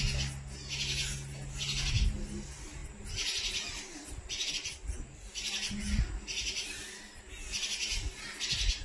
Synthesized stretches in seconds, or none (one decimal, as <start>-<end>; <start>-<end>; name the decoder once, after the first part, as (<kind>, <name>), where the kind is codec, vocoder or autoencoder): none